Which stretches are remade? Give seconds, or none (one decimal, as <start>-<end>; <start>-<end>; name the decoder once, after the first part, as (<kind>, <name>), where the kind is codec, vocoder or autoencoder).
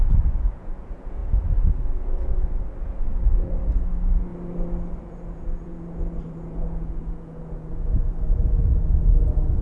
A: 0.0-1.2 (vocoder, Vocos); 3.8-4.3; 5.0-9.6